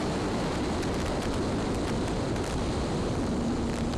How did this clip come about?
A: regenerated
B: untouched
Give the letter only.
A